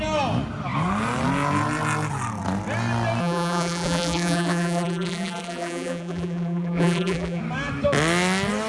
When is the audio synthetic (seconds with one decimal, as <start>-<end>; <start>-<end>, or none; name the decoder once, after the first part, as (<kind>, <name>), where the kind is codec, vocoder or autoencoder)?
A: 3.2-7.4 (vocoder, BigVGAN v2)

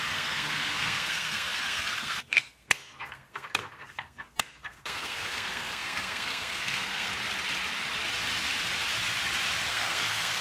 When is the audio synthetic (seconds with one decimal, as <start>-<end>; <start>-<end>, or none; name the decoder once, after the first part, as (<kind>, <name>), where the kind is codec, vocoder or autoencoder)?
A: 0.0-7.1 (codec, SNAC); 9.7-10.4

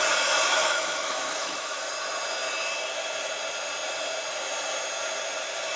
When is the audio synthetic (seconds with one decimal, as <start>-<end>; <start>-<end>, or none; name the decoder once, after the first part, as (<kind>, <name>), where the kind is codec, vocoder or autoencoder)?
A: 0.5-1.9 (autoencoder, DAC-VAE)

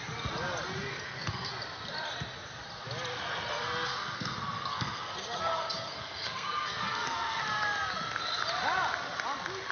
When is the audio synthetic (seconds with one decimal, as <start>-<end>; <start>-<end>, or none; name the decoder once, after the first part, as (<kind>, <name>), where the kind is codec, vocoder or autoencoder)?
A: 0.9-1.5 (codec, SNAC); 3.1-7.4

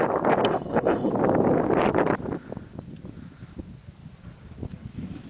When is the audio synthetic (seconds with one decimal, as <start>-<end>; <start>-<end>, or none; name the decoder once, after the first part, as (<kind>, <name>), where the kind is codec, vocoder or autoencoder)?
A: 0.5-1.1 (codec, HILCodec)

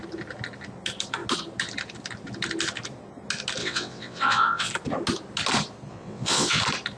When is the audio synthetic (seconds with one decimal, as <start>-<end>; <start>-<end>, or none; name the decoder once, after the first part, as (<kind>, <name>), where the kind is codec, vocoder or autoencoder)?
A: 3.6-4.7 (vocoder, WaveNeXt); 5.9-6.6

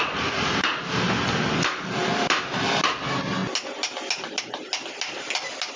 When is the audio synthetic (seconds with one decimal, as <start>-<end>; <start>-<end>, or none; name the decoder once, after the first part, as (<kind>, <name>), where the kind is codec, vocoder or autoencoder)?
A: none